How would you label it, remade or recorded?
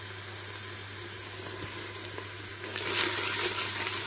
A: recorded